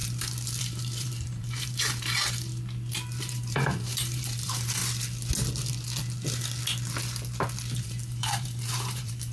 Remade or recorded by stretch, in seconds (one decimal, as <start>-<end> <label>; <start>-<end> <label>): 0.0-0.6 recorded; 0.6-2.5 remade; 2.5-3.2 recorded; 3.2-4.8 remade; 4.8-7.8 recorded; 7.8-9.3 remade